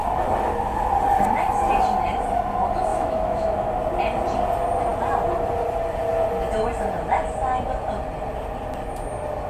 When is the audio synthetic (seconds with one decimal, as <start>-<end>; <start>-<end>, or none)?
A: 2.9-3.7